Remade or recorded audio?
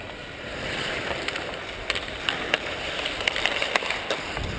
remade